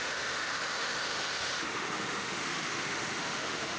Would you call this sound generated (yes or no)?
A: yes